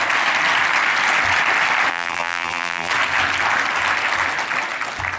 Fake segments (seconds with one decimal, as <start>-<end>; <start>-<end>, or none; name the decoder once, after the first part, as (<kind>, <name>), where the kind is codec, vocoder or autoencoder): 1.9-2.9 (vocoder, BigVGAN v2)